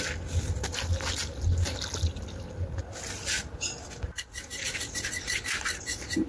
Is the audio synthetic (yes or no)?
no